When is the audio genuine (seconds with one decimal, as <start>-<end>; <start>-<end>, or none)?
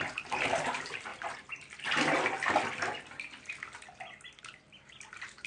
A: 1.1-4.4